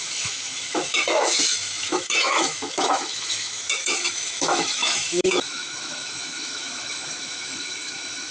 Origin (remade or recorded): remade